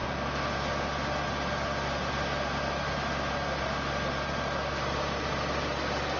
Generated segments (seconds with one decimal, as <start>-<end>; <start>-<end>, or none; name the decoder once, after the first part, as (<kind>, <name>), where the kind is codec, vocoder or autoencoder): none